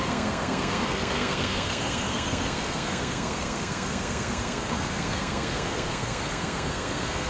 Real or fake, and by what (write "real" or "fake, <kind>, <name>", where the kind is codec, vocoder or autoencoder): fake, codec, SNAC